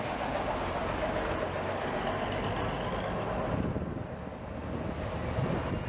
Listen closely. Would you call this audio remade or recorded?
recorded